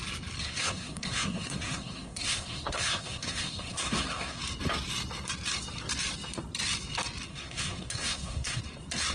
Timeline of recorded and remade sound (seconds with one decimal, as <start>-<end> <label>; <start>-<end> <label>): 0.0-0.4 recorded; 0.4-4.4 remade; 4.4-7.3 recorded; 7.3-8.6 remade; 8.6-9.1 recorded